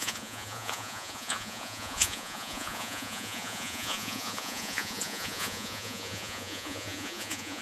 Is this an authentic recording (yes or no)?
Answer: no